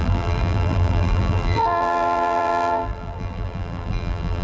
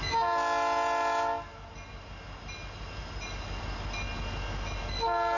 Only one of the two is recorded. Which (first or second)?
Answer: second